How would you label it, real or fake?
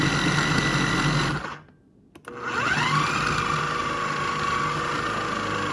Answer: real